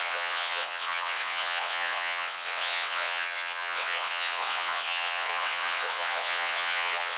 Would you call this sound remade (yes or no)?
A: yes